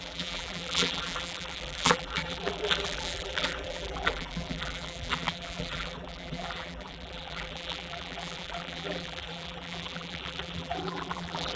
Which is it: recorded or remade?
remade